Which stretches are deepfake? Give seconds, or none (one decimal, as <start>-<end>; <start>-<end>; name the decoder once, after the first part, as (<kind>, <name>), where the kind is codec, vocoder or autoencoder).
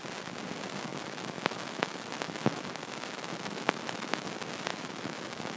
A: 0.9-4.3 (autoencoder, DAC-VAE); 4.7-5.6